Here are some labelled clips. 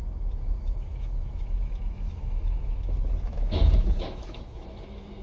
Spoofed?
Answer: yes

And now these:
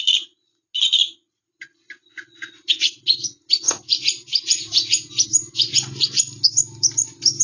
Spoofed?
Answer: no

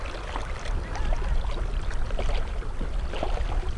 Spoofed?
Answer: no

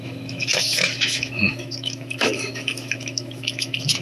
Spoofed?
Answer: yes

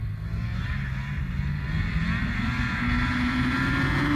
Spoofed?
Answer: no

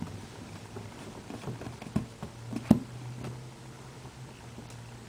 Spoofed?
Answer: no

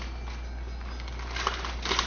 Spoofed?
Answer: no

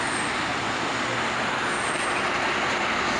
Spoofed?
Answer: no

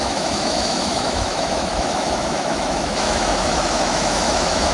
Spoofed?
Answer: yes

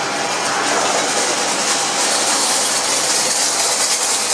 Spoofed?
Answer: no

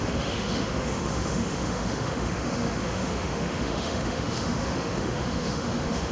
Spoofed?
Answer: yes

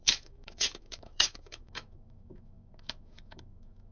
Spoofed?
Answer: yes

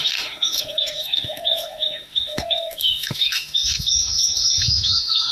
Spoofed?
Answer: yes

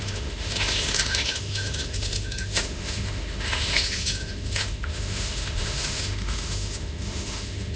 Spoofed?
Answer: yes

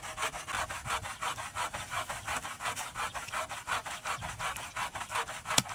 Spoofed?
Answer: no